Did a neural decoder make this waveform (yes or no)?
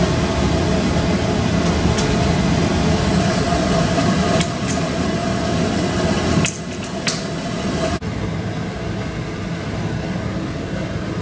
no